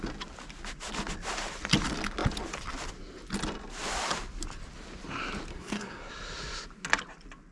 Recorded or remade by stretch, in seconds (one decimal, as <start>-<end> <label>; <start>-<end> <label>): 0.0-5.5 recorded; 5.5-6.1 remade; 6.1-7.5 recorded